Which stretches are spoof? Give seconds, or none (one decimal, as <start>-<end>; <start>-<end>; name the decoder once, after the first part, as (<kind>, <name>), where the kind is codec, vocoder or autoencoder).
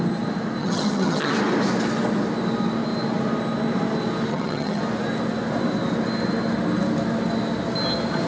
0.6-1.3 (vocoder, HiFi-GAN); 4.3-4.8